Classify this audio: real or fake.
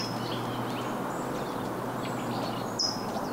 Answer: real